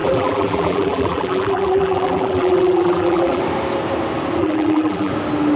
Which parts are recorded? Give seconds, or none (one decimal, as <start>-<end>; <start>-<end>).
3.4-4.4; 5.1-5.6